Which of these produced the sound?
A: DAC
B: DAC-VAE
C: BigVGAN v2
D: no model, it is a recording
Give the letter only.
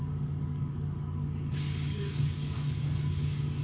A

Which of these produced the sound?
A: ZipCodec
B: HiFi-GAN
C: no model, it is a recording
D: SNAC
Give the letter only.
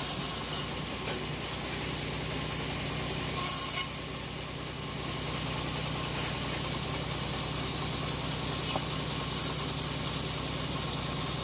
C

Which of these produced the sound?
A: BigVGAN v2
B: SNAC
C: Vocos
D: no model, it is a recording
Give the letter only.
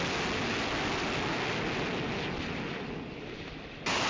D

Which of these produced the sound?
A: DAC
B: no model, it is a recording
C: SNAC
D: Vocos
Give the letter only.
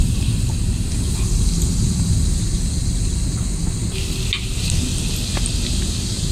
B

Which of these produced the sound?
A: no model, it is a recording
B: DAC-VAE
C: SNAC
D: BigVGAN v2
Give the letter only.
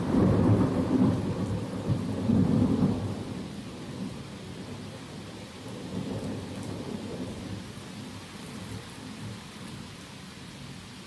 D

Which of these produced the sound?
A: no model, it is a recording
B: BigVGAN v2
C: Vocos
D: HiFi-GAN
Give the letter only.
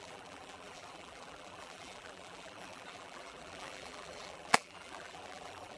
B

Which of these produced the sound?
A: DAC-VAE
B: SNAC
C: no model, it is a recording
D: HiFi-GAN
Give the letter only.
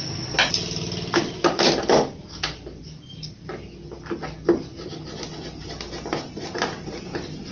C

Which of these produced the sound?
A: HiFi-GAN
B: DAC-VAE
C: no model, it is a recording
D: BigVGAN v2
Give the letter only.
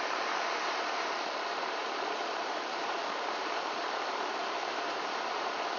D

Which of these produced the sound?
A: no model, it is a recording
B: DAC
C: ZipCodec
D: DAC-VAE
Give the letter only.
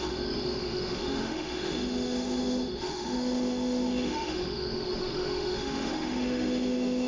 D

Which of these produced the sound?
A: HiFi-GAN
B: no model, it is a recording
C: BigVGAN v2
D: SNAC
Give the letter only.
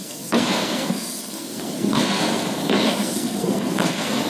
D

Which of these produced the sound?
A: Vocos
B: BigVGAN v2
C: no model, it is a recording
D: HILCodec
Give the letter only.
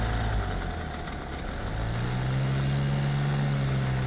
C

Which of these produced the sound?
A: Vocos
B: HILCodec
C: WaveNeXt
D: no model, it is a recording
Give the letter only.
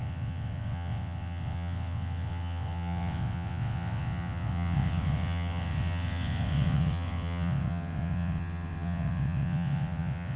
C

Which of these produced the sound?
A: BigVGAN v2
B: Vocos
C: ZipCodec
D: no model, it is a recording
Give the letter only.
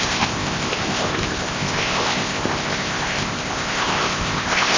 C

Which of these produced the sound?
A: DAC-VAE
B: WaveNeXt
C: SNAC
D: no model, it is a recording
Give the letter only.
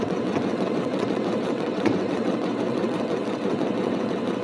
B